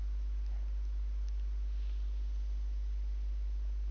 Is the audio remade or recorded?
recorded